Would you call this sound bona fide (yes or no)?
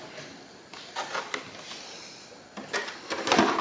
yes